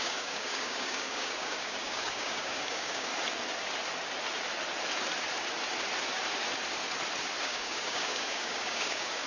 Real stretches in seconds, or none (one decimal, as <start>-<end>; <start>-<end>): 3.1-7.4